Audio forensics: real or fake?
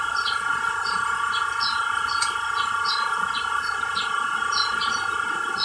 fake